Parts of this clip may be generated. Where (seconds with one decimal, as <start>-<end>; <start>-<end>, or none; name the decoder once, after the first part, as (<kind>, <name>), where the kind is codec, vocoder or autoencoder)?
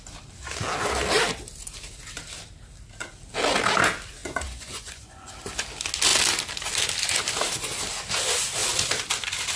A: 4.2-5.3 (vocoder, Vocos)